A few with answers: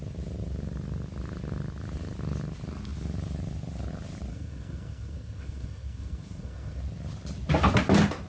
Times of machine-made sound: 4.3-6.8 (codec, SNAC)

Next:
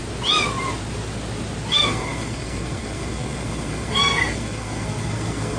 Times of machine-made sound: 1.7-5.6 (codec, SNAC)

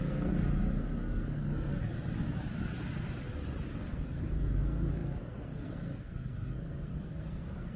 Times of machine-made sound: 0.0-1.7 (codec, SNAC); 3.8-7.8

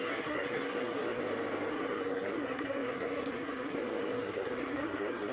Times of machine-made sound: 0.0-1.2 (codec, SNAC); 1.7-5.3

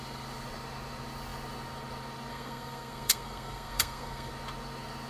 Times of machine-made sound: 2.3-4.3 (codec, SNAC)

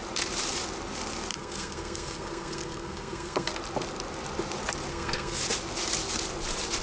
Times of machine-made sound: 1.3-3.5 (codec, SNAC); 4.9-5.4